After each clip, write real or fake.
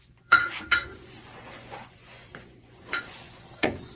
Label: fake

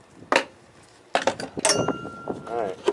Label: real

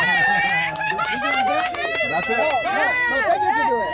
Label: fake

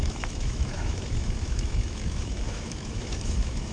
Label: fake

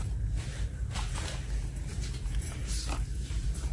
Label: fake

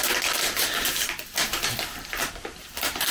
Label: fake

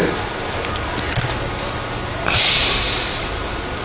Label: real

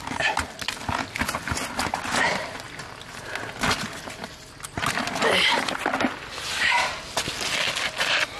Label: real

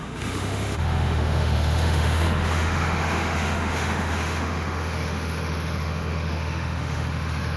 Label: fake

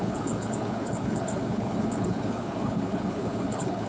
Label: fake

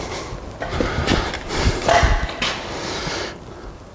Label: real